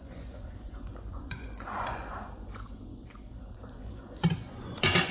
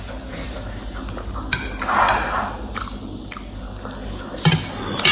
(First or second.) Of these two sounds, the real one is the second